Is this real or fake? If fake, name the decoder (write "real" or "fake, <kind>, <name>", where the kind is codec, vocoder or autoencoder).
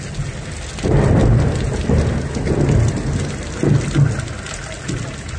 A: real